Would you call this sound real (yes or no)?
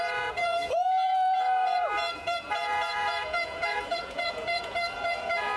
no